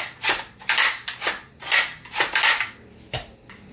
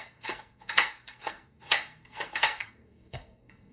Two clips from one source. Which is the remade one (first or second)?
second